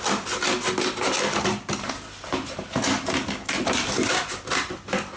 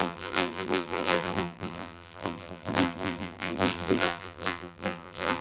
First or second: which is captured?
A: first